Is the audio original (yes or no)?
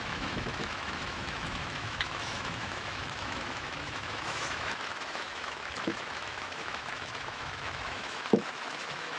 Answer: no